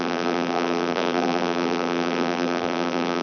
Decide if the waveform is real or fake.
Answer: fake